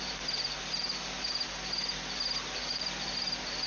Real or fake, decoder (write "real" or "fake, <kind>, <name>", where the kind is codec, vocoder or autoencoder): real